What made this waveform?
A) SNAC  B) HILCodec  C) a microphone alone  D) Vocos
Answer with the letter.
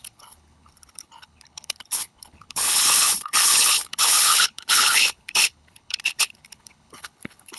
B